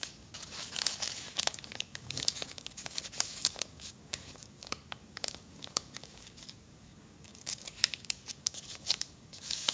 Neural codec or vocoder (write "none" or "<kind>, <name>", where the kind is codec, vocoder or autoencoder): codec, DAC